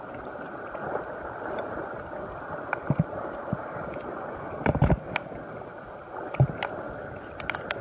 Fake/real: real